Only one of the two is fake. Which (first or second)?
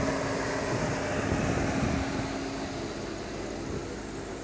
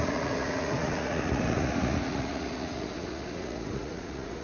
second